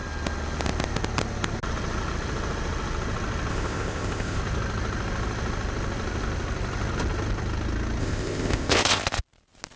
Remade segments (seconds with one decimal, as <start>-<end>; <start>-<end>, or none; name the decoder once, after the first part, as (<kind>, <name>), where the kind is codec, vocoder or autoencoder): 3.5-4.4 (codec, ZipCodec); 8.0-9.2